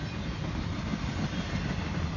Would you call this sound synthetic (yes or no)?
no